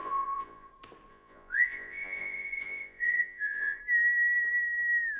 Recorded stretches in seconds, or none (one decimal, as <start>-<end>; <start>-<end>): 0.7-1.1; 3.8-5.2